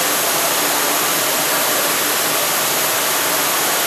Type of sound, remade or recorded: recorded